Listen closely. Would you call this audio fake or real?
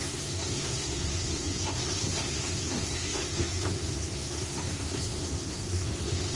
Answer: fake